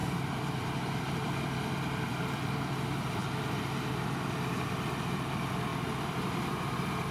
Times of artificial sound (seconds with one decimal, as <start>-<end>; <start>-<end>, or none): 0.0-3.2; 3.9-7.1